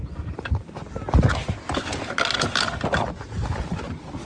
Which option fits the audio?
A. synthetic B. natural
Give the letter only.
B